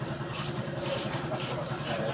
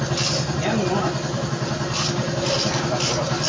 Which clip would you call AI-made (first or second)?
first